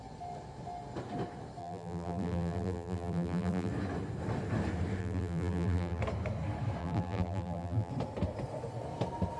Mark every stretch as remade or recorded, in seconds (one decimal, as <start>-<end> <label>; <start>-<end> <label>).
0.0-1.6 recorded; 1.6-3.7 remade; 3.7-5.0 recorded; 5.0-6.0 remade; 6.0-6.8 recorded; 6.8-7.9 remade; 7.9-9.4 recorded